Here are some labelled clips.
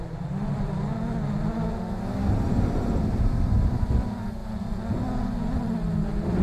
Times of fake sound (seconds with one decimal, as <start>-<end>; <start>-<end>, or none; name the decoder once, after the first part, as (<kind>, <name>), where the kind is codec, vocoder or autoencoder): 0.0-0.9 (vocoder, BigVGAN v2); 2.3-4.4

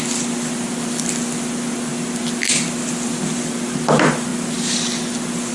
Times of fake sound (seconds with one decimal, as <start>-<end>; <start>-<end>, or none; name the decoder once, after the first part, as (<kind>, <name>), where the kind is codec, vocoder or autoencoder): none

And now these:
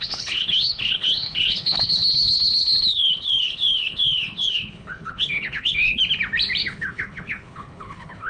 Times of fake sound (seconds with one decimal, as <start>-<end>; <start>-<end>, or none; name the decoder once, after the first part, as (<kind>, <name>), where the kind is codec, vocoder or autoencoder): 0.0-6.0 (codec, HILCodec); 6.6-8.3

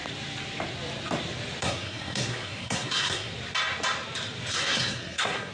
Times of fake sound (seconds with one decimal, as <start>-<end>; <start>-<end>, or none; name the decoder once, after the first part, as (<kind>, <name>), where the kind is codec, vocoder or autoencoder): 1.6-3.3 (codec, SNAC); 4.5-5.5